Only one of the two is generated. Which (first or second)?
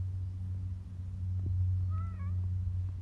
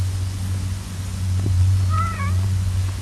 second